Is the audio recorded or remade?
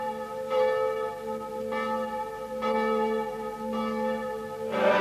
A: recorded